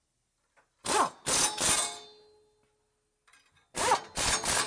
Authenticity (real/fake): real